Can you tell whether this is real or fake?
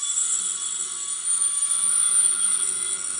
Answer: real